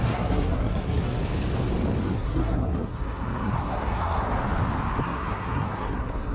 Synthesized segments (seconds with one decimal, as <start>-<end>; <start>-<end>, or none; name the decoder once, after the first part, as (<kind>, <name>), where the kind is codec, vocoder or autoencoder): 0.0-1.2 (codec, SNAC); 2.0-4.3; 5.0-6.3

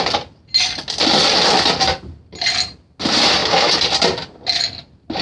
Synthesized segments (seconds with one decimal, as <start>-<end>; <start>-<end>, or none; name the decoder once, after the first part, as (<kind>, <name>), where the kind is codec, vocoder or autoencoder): none